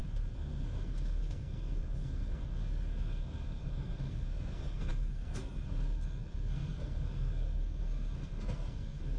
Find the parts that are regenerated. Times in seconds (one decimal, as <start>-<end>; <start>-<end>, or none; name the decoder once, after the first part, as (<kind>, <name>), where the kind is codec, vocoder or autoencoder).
0.0-9.2 (codec, SNAC)